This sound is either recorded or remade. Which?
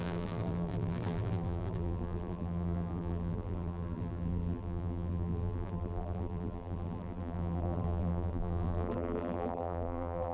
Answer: remade